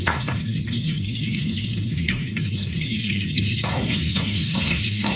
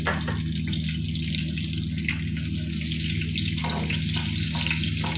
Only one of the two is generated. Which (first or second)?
first